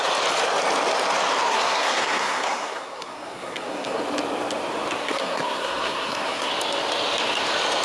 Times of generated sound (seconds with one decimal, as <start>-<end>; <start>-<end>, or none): 1.5-4.0; 5.0-6.5